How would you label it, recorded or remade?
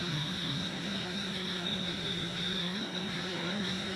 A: remade